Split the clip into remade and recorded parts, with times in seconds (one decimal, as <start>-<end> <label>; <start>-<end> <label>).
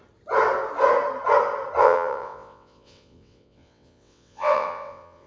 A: 0.0-1.8 recorded; 1.8-5.3 remade